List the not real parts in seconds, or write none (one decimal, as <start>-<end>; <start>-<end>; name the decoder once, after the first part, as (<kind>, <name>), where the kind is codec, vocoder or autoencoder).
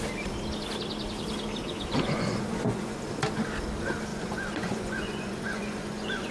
1.6-3.0 (vocoder, Vocos); 4.1-6.3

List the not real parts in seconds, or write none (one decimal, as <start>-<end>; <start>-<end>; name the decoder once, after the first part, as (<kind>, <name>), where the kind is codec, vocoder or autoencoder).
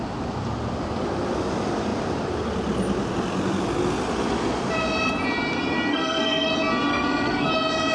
5.9-6.5 (codec, SNAC); 6.9-7.5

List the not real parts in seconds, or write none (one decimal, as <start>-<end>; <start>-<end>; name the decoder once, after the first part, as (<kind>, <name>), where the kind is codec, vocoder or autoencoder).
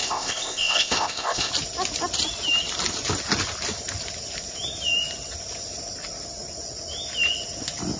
0.0-1.5 (codec, ZipCodec)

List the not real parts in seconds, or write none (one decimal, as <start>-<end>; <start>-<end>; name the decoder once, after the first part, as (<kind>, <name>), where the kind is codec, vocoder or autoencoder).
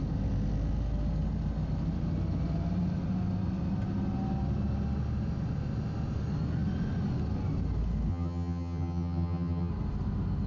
8.1-9.7 (vocoder, HiFi-GAN)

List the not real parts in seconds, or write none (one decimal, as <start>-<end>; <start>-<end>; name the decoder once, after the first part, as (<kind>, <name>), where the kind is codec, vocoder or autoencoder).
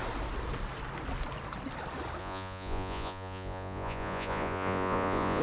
2.2-5.4 (vocoder, Vocos)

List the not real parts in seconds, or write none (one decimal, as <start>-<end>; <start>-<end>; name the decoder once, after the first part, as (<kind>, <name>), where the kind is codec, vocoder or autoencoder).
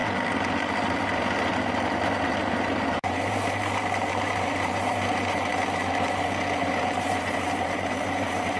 2.6-5.5 (vocoder, BigVGAN v2); 6.6-8.6